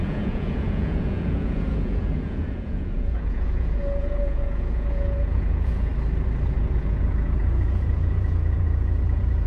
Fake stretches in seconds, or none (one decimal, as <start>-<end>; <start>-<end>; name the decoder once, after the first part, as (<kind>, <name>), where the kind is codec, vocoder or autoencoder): 0.0-5.9 (vocoder, Vocos); 6.6-9.5